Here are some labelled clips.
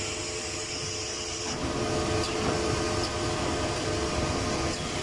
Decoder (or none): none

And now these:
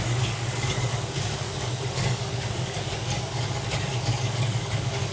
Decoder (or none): codec, DAC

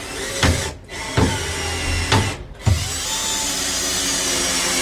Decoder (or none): none